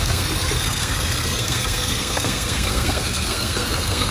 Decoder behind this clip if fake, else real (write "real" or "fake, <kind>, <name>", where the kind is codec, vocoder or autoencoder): fake, codec, SNAC